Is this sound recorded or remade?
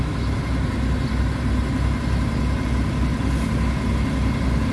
recorded